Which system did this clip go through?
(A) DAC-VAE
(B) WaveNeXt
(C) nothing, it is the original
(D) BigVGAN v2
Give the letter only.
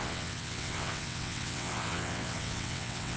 B